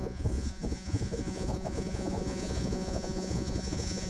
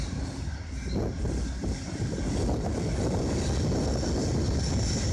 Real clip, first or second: second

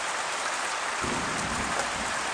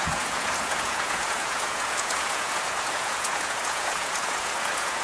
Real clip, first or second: first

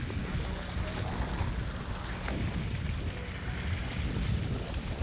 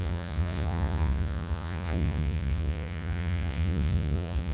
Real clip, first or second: first